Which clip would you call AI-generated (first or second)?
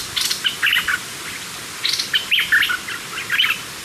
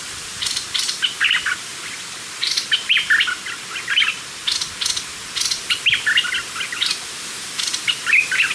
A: second